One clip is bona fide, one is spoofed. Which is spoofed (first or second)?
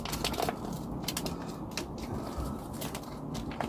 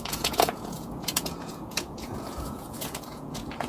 second